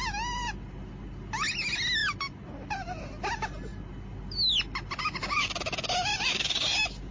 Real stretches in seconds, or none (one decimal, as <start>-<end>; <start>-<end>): 0.0-2.0; 3.0-6.1